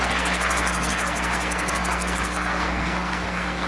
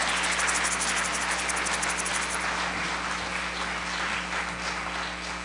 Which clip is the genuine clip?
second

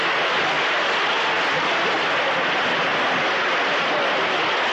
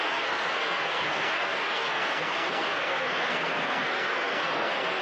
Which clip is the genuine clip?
first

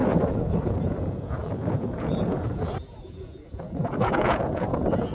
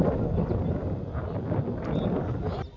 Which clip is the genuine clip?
second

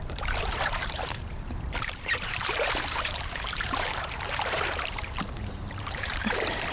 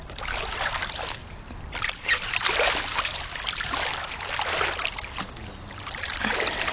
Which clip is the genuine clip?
second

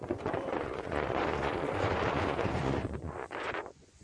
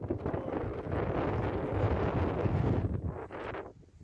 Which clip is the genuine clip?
second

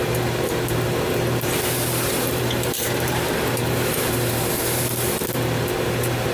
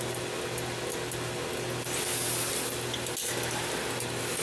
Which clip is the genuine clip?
second